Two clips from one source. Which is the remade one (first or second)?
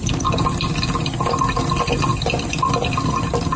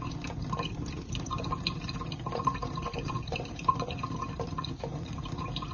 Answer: second